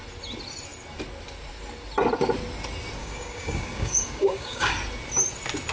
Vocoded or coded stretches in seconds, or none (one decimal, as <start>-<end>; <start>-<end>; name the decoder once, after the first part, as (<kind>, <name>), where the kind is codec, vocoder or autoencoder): 3.0-4.7 (codec, DAC)

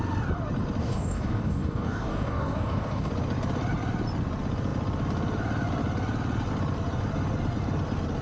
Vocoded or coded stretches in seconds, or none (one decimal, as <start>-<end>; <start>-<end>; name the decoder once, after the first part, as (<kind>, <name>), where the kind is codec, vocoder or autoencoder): 0.8-3.1 (codec, DAC)

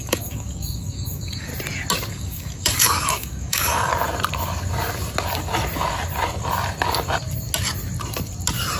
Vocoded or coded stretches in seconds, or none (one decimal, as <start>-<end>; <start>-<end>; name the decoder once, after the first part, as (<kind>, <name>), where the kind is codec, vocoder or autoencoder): 0.0-1.5 (codec, DAC); 2.1-3.9

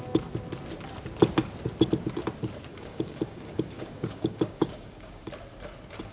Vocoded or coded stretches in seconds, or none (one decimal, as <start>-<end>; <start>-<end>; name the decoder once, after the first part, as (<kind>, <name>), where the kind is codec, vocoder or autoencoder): 2.7-5.2 (codec, DAC)